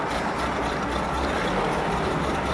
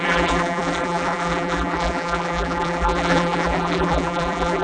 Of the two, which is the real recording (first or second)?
first